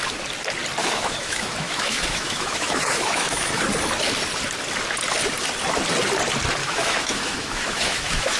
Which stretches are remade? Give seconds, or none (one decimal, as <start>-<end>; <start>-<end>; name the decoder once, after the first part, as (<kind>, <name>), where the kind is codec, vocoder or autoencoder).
0.8-3.6 (autoencoder, DAC-VAE); 6.6-8.4